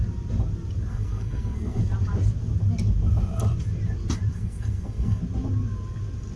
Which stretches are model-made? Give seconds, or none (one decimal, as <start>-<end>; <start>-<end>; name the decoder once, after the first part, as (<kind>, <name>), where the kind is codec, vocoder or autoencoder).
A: 0.9-1.8 (codec, SNAC); 4.3-5.2